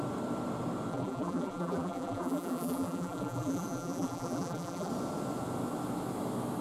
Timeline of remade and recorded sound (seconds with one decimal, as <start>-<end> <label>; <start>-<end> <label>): 0.0-0.9 recorded; 0.9-4.9 remade; 4.9-6.6 recorded

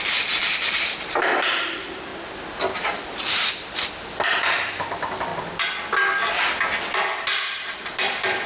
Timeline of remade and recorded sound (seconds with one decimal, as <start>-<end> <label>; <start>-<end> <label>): 0.0-2.1 remade; 2.1-3.0 recorded; 3.0-5.3 remade; 5.3-6.9 recorded; 6.9-8.5 remade

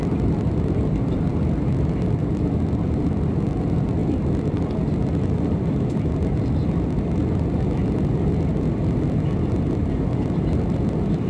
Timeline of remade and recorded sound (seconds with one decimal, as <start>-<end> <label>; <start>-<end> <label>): 0.0-7.2 remade; 7.2-8.5 recorded; 8.5-11.3 remade

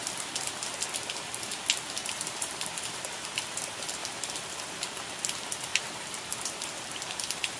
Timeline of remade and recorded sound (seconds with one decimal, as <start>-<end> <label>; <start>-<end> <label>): 0.0-2.0 recorded; 2.0-3.1 remade; 3.1-4.0 recorded; 4.0-5.0 remade; 5.0-5.7 recorded; 5.7-7.6 remade

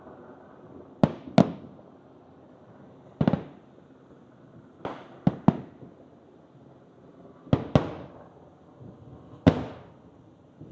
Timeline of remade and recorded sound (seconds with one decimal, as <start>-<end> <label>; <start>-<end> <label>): 0.0-10.7 recorded

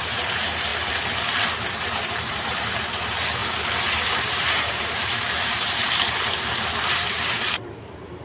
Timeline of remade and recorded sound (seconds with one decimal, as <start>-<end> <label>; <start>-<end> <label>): 0.0-0.7 remade; 0.7-1.7 recorded; 1.7-3.4 remade; 3.4-4.1 recorded; 4.1-8.2 remade

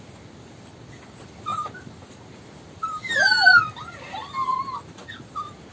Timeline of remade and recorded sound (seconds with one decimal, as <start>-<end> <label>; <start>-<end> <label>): 0.0-5.7 recorded

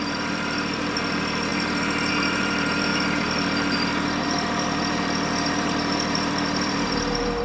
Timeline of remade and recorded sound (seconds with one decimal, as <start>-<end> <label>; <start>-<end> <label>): 0.0-7.4 remade